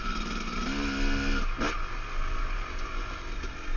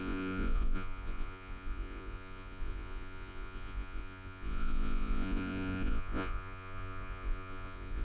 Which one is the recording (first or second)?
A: first